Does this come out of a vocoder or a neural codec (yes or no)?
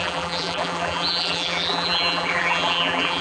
yes